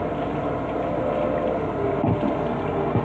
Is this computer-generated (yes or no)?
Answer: no